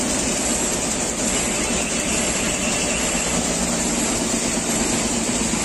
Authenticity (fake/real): real